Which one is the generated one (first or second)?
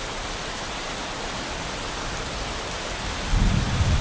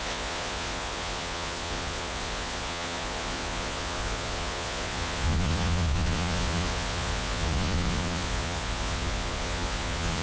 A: second